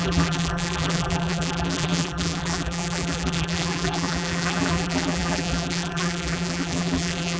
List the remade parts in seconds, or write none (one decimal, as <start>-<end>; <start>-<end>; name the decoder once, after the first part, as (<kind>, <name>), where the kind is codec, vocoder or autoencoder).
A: 0.0-7.4 (vocoder, BigVGAN v2)